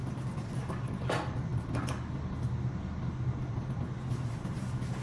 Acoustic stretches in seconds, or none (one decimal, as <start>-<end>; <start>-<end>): 0.0-5.0